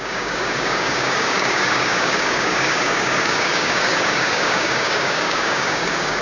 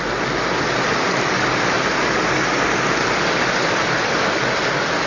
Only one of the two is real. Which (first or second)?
second